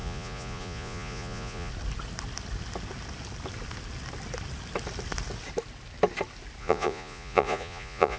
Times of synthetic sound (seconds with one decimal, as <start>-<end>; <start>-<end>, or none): 0.0-1.7; 6.6-8.2